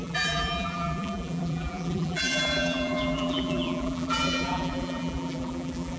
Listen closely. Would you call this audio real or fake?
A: fake